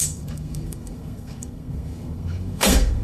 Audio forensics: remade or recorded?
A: remade